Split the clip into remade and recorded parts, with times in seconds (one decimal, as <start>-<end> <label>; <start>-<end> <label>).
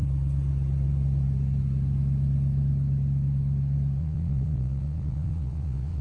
0.0-4.0 recorded; 4.0-6.0 remade